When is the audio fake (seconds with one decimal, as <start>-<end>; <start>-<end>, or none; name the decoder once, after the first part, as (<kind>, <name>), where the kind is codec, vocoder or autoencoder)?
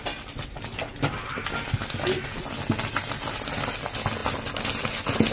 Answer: none